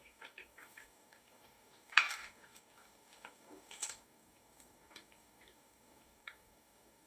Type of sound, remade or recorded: remade